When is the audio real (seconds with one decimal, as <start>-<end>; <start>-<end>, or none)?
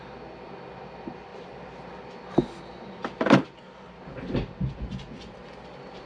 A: 0.0-1.3; 1.9-3.0; 4.0-6.1